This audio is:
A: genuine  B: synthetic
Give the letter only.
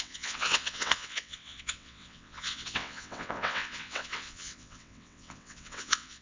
B